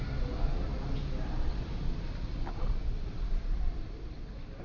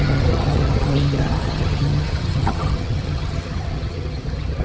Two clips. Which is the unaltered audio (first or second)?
first